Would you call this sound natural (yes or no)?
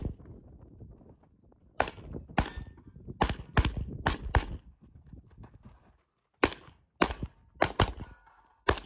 yes